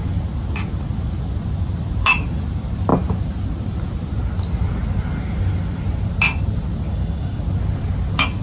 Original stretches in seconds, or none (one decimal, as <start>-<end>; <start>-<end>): 0.0-6.9; 7.4-8.4